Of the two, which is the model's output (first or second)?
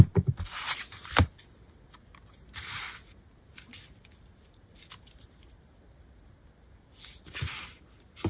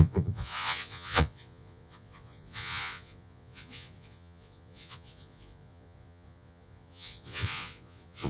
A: second